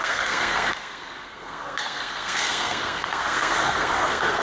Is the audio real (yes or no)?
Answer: no